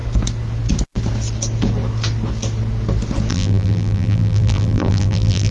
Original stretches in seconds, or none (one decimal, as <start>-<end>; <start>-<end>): 0.0-3.3